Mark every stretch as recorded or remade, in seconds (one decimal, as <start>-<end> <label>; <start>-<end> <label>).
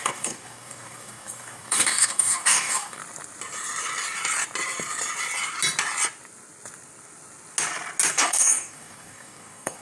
0.0-3.0 remade; 3.0-8.1 recorded; 8.1-9.8 remade